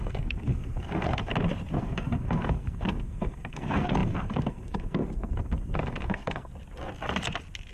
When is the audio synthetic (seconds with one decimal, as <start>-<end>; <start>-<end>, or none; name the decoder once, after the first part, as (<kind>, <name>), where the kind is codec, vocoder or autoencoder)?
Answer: 0.0-1.3 (codec, SNAC); 1.8-6.5